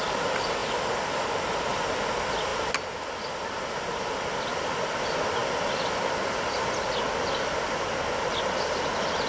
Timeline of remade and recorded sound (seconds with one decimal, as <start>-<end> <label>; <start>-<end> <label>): 0.0-9.3 recorded